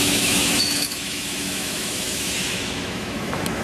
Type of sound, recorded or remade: remade